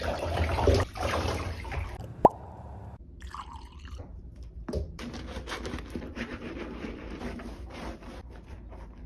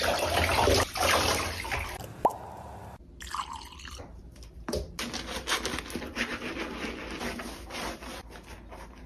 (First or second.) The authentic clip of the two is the second